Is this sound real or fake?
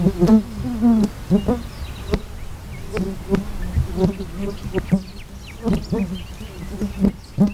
real